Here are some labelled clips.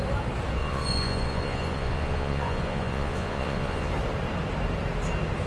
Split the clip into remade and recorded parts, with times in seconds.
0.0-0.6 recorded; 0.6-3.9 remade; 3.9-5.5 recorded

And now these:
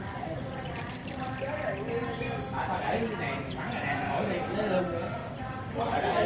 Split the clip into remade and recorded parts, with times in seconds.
0.0-5.2 recorded; 5.2-5.7 remade; 5.7-6.3 recorded

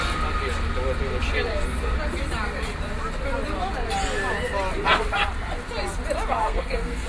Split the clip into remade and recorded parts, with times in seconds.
0.0-6.4 recorded; 6.4-7.1 remade